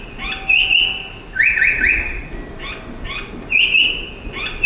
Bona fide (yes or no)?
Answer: yes